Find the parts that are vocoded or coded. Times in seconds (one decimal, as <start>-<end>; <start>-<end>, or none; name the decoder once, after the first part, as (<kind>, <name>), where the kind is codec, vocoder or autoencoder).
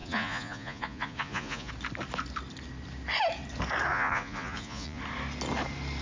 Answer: 0.0-1.7 (vocoder, Vocos); 3.9-5.0